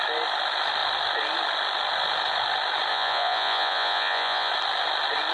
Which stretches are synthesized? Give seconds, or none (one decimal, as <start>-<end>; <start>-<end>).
2.9-4.5